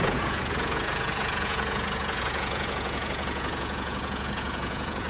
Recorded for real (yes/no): no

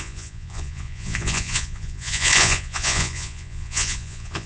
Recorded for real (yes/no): no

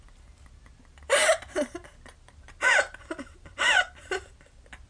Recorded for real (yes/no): yes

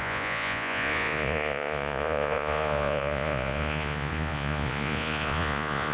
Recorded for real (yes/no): no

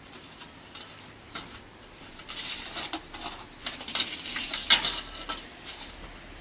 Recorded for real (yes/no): yes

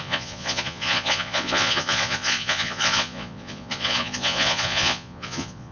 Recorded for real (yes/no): no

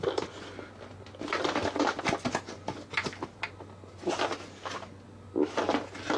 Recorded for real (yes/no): yes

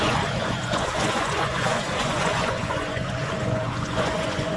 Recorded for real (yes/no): no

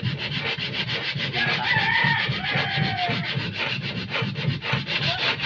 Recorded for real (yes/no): yes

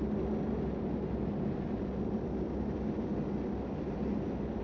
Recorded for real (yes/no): yes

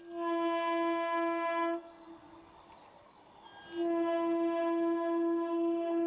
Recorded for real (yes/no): yes